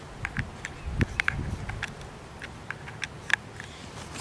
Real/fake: real